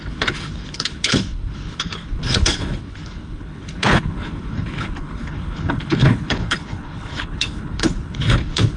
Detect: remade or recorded remade